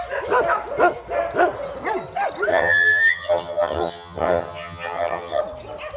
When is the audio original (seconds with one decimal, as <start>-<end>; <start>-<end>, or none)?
0.0-2.5; 5.4-6.0